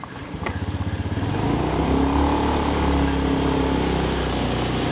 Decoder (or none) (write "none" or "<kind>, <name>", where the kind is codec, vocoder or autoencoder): none